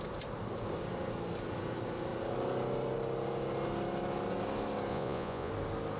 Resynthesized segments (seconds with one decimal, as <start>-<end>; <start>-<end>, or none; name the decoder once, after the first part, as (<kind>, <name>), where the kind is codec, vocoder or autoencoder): 4.9-5.5 (vocoder, Vocos)